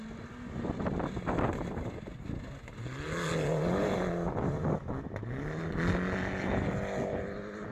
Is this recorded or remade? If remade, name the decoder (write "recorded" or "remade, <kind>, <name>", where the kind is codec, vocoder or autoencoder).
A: recorded